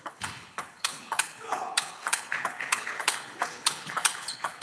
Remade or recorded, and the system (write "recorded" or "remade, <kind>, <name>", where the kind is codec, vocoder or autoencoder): remade, codec, HILCodec